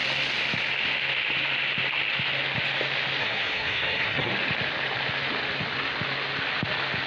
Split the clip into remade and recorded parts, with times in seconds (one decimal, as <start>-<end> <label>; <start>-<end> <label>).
0.0-3.2 recorded; 3.2-4.3 remade; 4.3-7.1 recorded